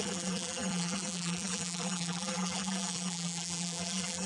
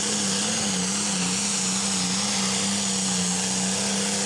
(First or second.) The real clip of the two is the second